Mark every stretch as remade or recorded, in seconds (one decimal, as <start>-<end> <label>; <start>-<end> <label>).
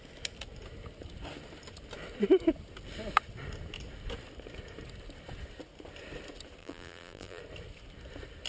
0.0-6.6 recorded; 6.6-7.4 remade; 7.4-8.5 recorded